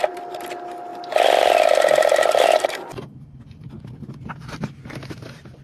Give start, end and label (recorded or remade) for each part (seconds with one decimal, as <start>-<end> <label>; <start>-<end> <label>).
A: 0.0-5.6 recorded